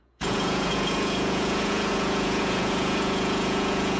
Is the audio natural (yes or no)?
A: no